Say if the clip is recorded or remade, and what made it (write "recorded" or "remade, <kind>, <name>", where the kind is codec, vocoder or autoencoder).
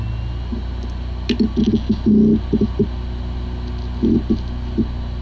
recorded